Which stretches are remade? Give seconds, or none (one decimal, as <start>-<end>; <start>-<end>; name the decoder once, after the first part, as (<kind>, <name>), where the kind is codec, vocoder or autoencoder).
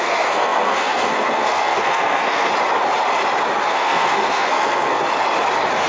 0.0-2.5 (codec, SNAC); 3.7-5.0